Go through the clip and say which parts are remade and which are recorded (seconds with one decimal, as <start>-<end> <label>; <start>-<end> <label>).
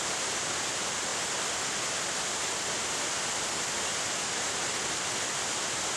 0.0-6.0 recorded